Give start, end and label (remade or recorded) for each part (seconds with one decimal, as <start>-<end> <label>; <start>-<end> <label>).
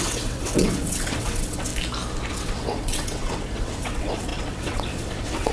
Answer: 0.0-1.7 remade; 1.7-2.3 recorded; 2.3-5.5 remade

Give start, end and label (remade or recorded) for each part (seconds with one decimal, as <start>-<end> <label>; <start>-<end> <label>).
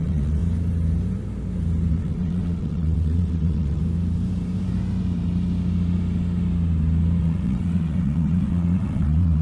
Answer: 0.0-0.4 remade; 0.4-1.9 recorded; 1.9-3.8 remade; 3.8-7.2 recorded; 7.2-9.4 remade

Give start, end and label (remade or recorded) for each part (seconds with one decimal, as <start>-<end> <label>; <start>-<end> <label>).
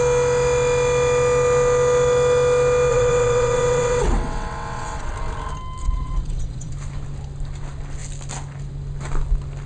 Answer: 0.0-2.9 recorded; 2.9-5.1 remade; 5.1-5.8 recorded; 5.8-6.7 remade; 6.7-9.7 recorded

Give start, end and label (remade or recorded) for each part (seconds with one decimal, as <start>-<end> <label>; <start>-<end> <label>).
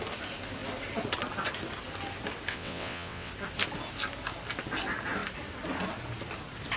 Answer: 0.0-2.5 recorded; 2.5-3.3 remade; 3.3-6.8 recorded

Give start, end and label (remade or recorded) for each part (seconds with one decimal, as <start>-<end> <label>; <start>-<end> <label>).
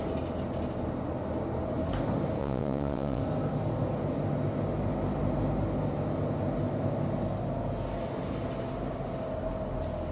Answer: 0.0-2.4 recorded; 2.4-3.2 remade; 3.2-10.1 recorded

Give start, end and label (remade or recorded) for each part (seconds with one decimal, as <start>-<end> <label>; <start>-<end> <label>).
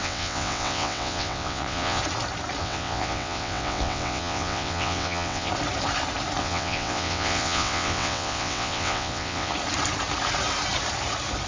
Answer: 0.0-2.0 remade; 2.0-2.6 recorded; 2.6-5.5 remade; 5.5-6.4 recorded; 6.4-9.5 remade; 9.5-11.5 recorded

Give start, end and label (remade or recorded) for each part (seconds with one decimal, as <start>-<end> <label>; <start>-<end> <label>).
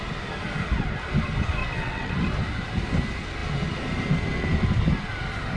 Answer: 0.0-1.6 recorded; 1.6-2.1 remade; 2.1-5.6 recorded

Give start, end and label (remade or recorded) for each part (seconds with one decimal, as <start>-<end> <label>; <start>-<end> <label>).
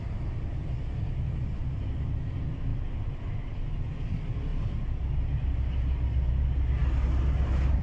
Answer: 0.0-7.8 recorded